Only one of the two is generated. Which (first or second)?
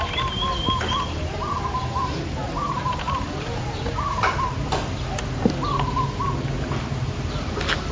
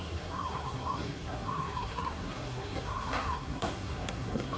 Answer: second